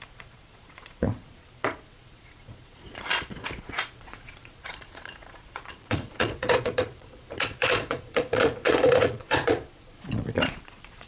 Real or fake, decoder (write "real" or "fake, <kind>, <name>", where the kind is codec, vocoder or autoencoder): fake, vocoder, Vocos